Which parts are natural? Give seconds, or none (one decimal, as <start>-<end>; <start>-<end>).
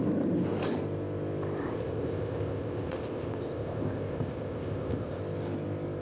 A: 0.0-1.6; 5.2-6.0